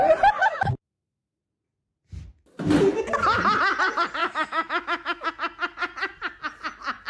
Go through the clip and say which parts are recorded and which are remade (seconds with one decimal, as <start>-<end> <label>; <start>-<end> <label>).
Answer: 0.0-0.4 recorded; 0.4-1.4 remade; 1.4-4.2 recorded; 4.2-5.3 remade; 5.3-7.1 recorded